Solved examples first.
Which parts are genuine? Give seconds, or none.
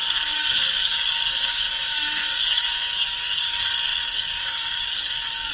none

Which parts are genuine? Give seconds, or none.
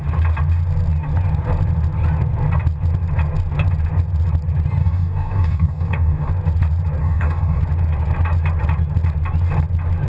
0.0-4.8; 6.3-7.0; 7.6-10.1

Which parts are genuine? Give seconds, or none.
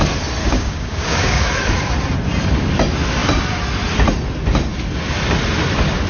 0.0-0.4; 1.5-6.1